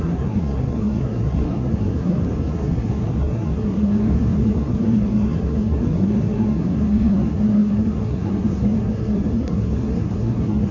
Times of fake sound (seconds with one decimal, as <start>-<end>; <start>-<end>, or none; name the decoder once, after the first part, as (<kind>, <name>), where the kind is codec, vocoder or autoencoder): 0.0-10.7 (codec, SNAC)